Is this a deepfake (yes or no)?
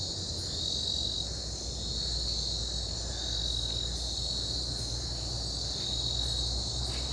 no